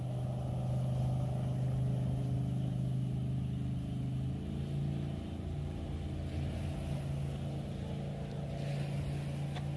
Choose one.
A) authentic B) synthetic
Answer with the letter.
A